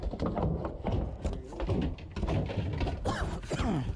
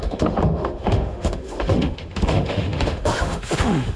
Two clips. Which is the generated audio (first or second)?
second